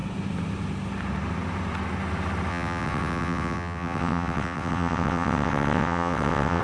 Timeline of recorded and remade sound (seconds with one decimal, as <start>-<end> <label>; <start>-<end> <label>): 0.0-2.5 recorded; 2.5-6.6 remade